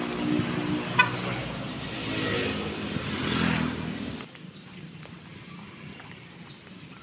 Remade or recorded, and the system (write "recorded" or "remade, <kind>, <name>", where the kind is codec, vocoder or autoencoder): recorded